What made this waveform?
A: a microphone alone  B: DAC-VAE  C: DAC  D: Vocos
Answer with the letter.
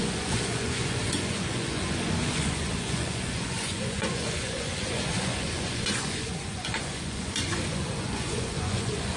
D